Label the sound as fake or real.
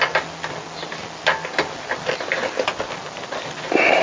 real